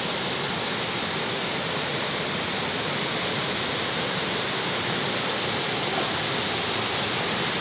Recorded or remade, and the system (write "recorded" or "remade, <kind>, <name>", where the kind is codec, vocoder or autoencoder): recorded